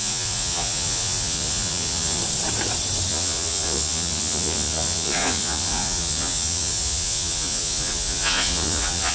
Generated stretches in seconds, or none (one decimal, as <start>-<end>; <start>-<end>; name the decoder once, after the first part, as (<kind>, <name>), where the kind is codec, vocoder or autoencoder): 0.0-2.2 (vocoder, Vocos); 3.1-9.1